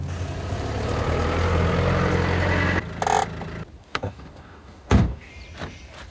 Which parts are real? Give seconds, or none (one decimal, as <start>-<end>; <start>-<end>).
0.0-3.8; 5.3-6.1